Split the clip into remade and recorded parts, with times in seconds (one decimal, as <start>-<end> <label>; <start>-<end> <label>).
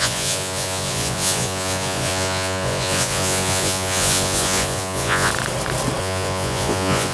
0.0-5.3 remade; 5.3-6.0 recorded; 6.0-7.1 remade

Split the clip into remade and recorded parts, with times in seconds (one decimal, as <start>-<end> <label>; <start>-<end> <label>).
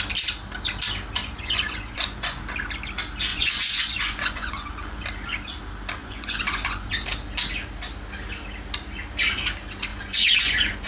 0.0-1.2 recorded; 1.2-2.4 remade; 2.4-3.3 recorded; 3.3-5.0 remade; 5.0-6.0 recorded; 6.0-6.9 remade; 6.9-9.9 recorded; 9.9-10.9 remade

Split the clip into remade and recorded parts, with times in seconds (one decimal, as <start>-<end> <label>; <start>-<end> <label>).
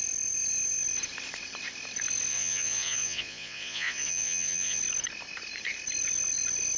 0.0-2.3 recorded; 2.3-4.8 remade; 4.8-6.8 recorded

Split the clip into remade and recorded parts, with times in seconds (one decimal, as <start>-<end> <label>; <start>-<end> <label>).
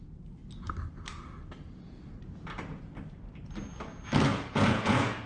0.0-4.3 recorded; 4.3-5.3 remade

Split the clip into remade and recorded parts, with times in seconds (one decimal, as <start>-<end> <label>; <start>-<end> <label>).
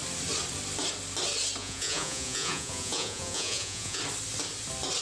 0.0-1.6 recorded; 1.6-4.0 remade; 4.0-5.0 recorded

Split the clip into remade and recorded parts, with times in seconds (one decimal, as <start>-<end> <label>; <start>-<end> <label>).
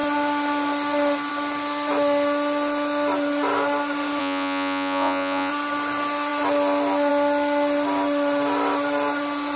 0.0-4.2 recorded; 4.2-5.5 remade; 5.5-9.6 recorded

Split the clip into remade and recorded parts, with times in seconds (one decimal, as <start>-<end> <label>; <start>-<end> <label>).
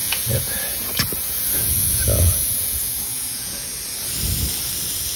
0.0-3.7 remade; 3.7-5.2 recorded